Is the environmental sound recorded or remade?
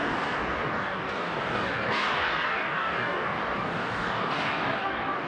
remade